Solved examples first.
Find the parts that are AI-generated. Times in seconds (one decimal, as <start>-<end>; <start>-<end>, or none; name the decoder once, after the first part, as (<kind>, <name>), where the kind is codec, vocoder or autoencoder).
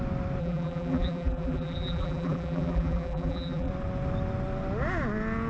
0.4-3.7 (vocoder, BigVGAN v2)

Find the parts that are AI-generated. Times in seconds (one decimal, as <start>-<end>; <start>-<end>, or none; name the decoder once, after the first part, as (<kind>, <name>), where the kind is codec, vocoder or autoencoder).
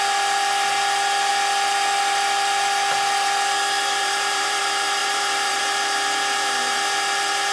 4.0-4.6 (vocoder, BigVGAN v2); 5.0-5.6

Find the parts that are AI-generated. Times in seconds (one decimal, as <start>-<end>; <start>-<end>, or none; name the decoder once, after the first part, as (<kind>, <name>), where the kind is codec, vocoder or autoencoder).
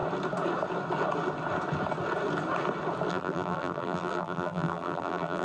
3.1-5.4 (vocoder, BigVGAN v2)